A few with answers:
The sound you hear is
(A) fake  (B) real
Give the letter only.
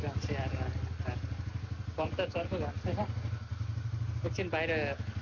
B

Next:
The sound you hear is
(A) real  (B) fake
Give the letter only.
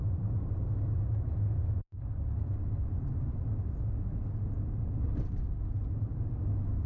A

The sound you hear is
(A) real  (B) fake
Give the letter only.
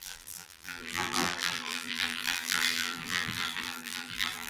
B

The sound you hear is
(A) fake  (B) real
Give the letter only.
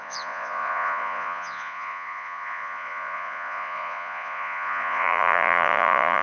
A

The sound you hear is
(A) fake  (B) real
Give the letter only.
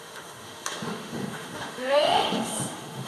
A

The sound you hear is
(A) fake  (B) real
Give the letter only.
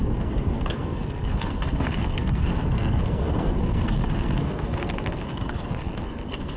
A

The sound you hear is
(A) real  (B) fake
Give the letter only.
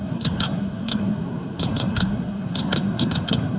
B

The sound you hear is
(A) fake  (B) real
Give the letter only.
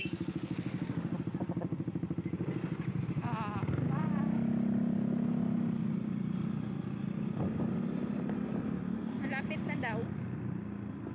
B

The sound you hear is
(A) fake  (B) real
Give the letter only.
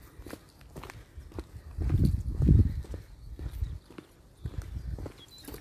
B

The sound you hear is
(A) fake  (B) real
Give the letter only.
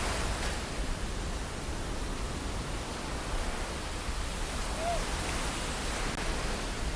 B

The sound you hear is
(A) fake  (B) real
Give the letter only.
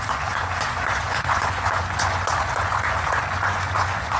A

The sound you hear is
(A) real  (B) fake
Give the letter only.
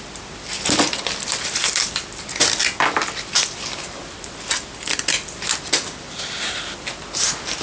A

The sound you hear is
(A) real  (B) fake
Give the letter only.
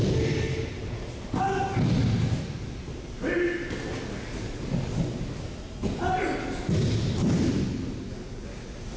A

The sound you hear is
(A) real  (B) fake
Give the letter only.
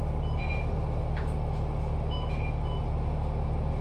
A